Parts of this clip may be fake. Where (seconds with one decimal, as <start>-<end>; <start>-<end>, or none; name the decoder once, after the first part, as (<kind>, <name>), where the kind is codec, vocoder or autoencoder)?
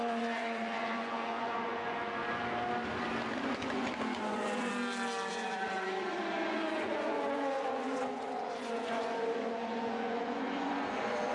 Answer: 0.0-2.2 (vocoder, Vocos); 3.5-4.7; 5.3-11.3